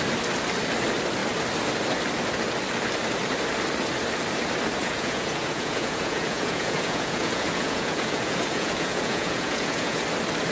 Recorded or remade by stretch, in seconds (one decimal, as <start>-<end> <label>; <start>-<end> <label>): 0.0-4.8 recorded; 4.8-10.0 remade; 10.0-10.5 recorded